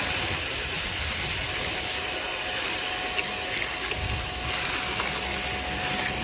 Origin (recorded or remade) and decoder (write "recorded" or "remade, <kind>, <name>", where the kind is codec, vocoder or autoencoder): recorded